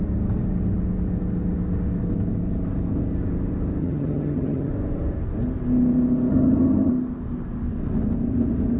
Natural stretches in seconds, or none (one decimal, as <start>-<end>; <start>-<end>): 0.0-3.8; 4.7-6.3; 6.9-8.8